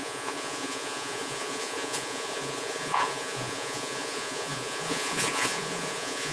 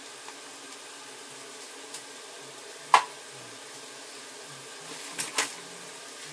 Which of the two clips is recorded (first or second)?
second